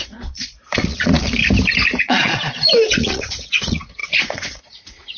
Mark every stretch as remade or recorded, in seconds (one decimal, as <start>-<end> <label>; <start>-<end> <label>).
0.0-1.4 remade; 1.4-2.0 recorded; 2.0-5.2 remade